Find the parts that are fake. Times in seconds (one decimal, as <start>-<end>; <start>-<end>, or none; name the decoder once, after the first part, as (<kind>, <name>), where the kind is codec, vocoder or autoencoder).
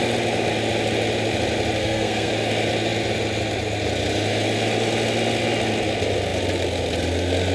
1.8-2.3 (codec, SNAC)